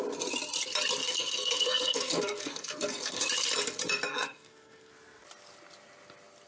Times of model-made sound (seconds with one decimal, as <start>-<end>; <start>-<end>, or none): 1.0-3.2; 4.1-4.9